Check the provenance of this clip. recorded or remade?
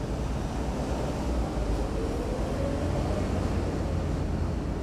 recorded